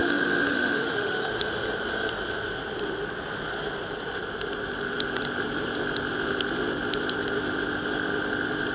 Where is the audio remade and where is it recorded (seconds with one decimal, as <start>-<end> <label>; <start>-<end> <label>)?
0.0-1.3 remade; 1.3-8.7 recorded